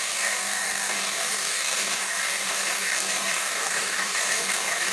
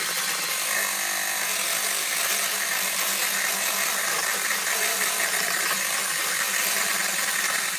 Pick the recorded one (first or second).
second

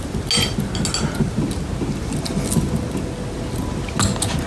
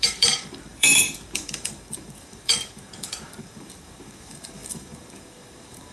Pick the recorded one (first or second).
first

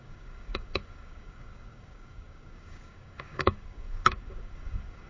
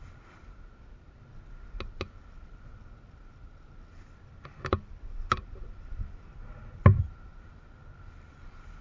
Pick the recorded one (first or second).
second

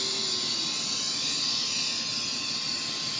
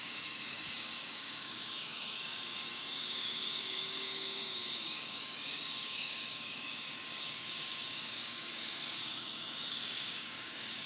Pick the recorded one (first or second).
first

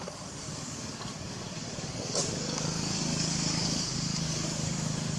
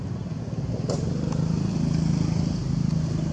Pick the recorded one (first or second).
second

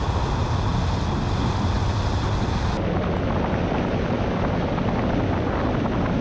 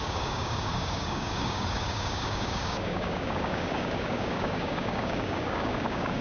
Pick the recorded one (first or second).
first